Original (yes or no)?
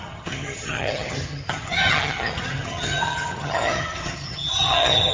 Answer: no